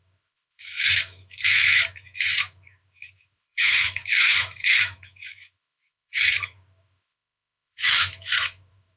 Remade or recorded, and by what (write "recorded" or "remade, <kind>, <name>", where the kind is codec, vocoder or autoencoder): remade, autoencoder, DAC-VAE